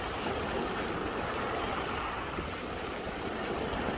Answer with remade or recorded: recorded